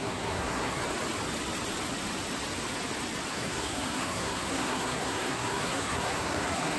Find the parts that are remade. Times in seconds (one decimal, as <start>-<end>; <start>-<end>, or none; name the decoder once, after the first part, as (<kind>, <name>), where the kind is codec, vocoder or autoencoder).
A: 0.0-0.8 (codec, SNAC); 3.3-6.8